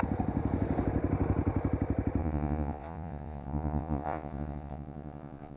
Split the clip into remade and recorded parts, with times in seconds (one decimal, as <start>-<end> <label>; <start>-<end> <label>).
0.0-2.2 recorded; 2.2-5.6 remade